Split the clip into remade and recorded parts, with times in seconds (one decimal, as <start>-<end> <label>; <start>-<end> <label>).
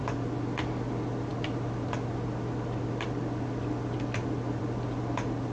0.0-5.5 recorded